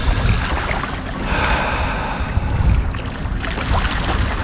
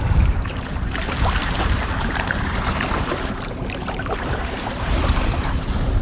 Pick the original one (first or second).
first